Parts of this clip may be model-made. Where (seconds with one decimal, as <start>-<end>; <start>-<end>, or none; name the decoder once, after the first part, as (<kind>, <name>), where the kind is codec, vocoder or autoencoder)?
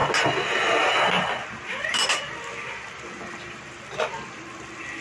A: none